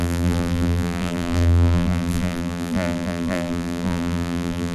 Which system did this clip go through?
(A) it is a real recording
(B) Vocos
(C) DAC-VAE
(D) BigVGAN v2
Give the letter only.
D